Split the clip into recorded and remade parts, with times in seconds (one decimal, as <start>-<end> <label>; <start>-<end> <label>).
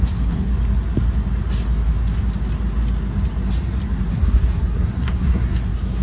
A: 0.0-0.5 remade; 0.5-4.1 recorded; 4.1-6.0 remade